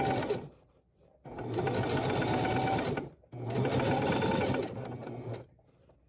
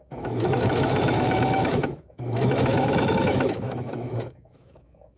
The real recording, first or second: first